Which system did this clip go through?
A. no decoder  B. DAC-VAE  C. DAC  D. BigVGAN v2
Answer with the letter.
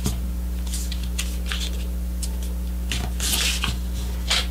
A